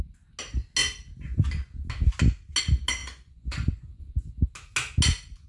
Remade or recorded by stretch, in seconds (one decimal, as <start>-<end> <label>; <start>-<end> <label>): 0.0-3.0 recorded; 3.0-4.1 remade; 4.1-5.5 recorded